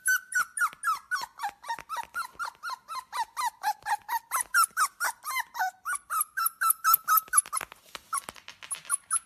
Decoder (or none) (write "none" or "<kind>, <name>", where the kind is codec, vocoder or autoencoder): none